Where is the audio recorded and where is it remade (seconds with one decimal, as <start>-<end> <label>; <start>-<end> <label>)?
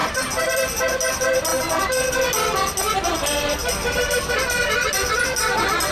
0.0-0.6 remade; 0.6-5.9 recorded